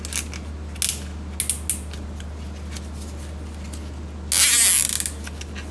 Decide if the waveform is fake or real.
real